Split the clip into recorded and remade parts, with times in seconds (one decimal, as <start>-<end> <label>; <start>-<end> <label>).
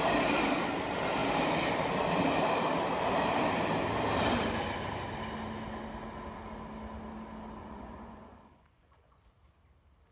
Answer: 0.0-7.6 recorded; 7.6-9.2 remade; 9.2-10.1 recorded